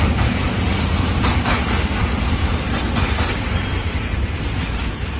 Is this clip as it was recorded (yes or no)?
yes